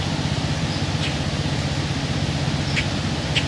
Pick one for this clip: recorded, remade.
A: recorded